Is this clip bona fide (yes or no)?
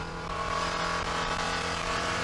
no